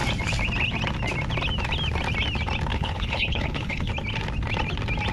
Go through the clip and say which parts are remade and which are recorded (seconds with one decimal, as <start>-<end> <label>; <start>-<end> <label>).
0.0-2.7 recorded; 2.7-3.9 remade; 3.9-5.1 recorded